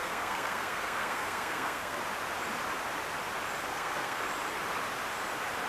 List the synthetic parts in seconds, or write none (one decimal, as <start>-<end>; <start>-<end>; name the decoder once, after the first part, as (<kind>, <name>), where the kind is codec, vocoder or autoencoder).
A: 0.0-2.0 (codec, SNAC); 3.7-4.2